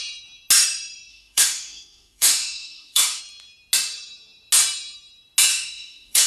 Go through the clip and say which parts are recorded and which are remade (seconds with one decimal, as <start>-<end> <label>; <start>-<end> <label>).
0.0-1.1 recorded; 1.1-3.2 remade; 3.2-5.5 recorded; 5.5-6.3 remade